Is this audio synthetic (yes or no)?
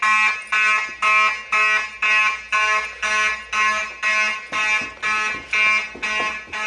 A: no